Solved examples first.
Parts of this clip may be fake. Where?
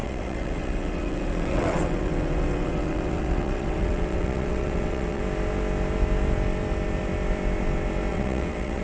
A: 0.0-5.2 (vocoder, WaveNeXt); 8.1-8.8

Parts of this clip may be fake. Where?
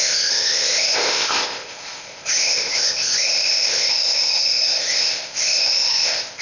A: 0.0-6.4 (codec, ZipCodec)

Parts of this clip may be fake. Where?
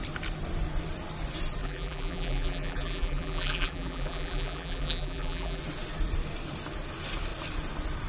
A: 1.6-5.6 (vocoder, BigVGAN v2)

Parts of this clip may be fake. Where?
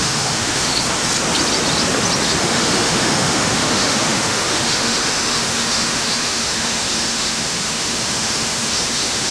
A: 0.0-0.7 (autoencoder, DAC-VAE); 2.4-9.3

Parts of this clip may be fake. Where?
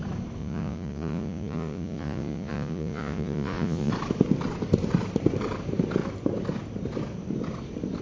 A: 0.4-3.9 (vocoder, Vocos)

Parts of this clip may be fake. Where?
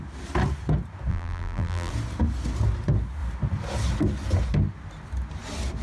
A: 1.1-1.9 (vocoder, BigVGAN v2)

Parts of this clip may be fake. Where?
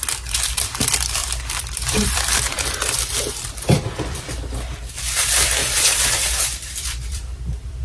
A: 1.2-4.2 (vocoder, BigVGAN v2); 5.6-7.8